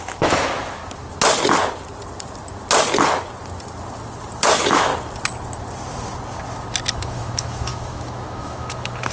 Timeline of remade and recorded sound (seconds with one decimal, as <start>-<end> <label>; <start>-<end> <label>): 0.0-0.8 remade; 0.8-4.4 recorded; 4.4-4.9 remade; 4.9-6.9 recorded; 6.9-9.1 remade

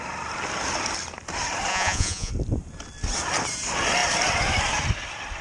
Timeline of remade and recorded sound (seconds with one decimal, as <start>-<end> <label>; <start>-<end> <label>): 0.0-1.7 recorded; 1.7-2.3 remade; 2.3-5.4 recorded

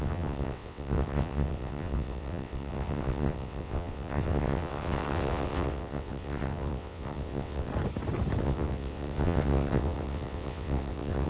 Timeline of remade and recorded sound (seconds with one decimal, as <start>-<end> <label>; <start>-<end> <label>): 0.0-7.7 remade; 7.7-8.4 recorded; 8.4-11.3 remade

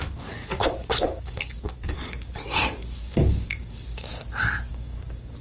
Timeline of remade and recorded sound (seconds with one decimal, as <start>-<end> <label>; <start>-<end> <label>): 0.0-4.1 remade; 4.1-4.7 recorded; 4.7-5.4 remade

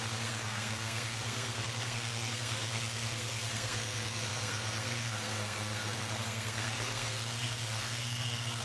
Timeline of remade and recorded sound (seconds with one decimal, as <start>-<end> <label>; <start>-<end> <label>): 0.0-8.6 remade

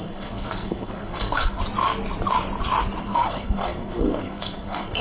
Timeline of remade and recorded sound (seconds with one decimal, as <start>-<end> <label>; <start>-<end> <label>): 0.0-1.6 remade; 1.6-3.0 recorded; 3.0-5.0 remade

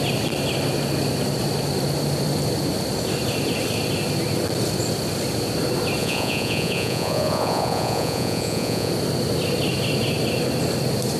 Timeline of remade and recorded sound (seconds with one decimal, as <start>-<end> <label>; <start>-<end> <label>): 0.0-6.0 recorded; 6.0-8.9 remade; 8.9-11.2 recorded